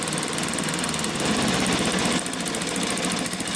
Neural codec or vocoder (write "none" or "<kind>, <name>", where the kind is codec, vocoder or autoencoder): none